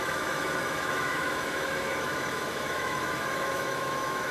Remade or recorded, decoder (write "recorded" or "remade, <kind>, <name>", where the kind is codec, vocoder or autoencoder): remade, autoencoder, DAC-VAE